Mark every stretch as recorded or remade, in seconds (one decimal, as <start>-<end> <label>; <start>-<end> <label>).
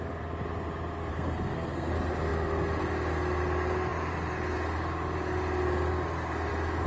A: 0.0-1.1 recorded; 1.1-1.9 remade; 1.9-6.9 recorded